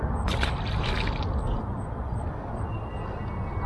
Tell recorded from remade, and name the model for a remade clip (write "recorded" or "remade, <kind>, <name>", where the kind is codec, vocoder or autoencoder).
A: recorded